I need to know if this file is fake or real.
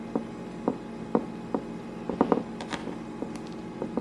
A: real